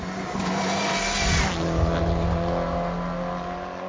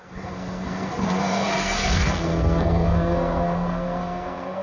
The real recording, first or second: first